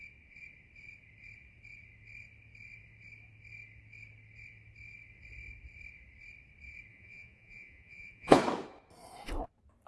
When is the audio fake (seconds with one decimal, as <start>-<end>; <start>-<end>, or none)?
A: 6.9-8.4

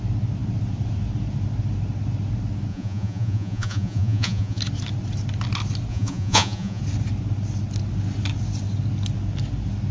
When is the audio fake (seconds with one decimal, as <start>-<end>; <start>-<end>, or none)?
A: 2.7-4.6; 5.9-6.8